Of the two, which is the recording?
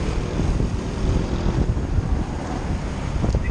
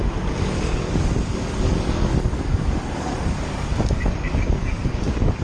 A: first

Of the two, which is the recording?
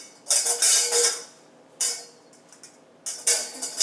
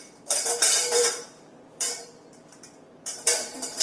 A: first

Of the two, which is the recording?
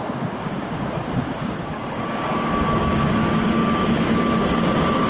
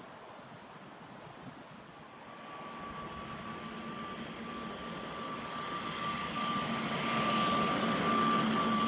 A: second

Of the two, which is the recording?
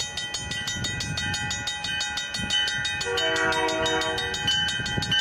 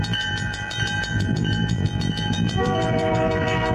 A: first